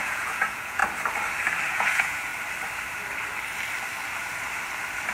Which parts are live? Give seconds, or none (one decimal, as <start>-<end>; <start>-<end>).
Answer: 0.8-1.7; 2.3-5.1